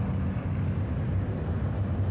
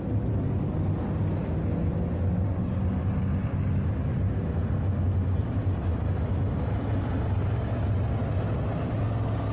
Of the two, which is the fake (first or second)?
first